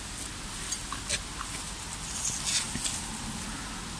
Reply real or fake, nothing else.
real